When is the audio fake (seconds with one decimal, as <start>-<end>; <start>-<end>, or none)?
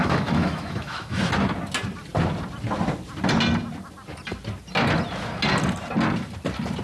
0.0-1.3